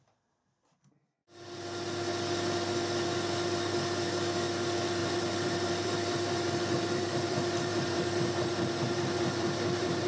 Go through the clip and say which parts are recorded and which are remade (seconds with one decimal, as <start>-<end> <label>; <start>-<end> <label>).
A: 0.0-5.0 recorded; 5.0-10.1 remade